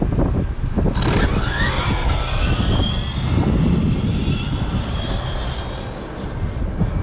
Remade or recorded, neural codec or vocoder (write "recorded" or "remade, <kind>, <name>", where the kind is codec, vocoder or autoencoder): recorded